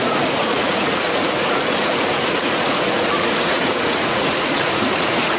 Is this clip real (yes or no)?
no